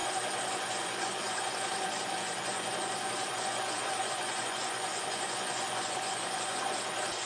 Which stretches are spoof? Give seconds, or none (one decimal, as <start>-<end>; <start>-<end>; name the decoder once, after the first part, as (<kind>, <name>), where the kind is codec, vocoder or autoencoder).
0.0-7.3 (vocoder, Vocos)